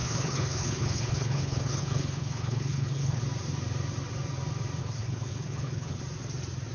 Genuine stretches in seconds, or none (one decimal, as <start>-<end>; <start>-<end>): 3.2-4.8; 6.0-6.7